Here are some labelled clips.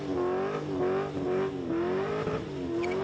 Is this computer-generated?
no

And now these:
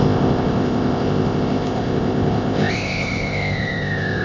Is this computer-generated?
yes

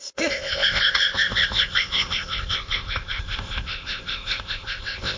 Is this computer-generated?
yes